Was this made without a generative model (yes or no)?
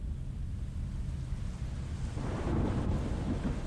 yes